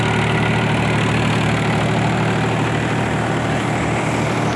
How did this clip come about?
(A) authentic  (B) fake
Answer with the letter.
A